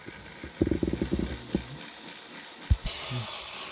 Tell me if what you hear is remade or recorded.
recorded